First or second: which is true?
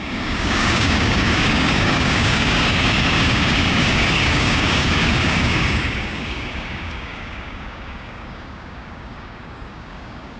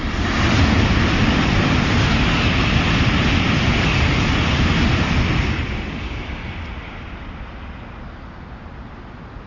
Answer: second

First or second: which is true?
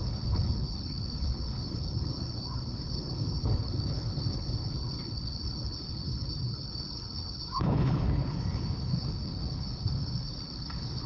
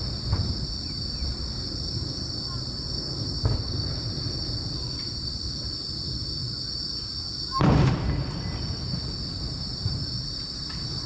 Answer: second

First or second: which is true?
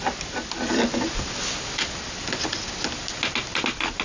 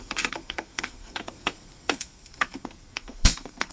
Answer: first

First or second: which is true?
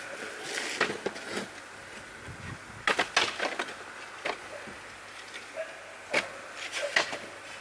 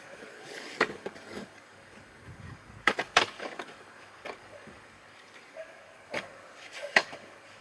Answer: first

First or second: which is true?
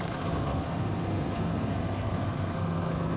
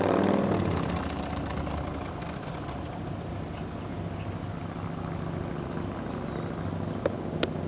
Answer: second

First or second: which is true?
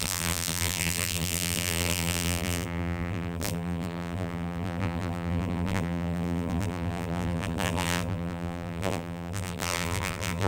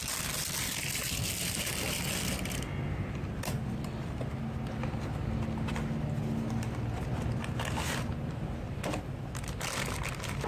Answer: second